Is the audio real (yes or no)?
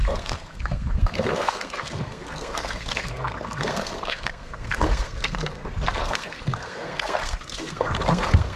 no